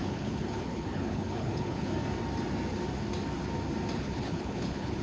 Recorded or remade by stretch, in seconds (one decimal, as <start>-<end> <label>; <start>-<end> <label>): 0.0-1.9 remade; 1.9-4.0 recorded; 4.0-5.0 remade